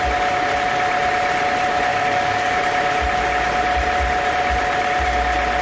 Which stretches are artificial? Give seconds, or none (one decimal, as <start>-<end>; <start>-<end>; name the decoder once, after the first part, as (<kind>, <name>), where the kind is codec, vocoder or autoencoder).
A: 1.9-2.6 (codec, DAC)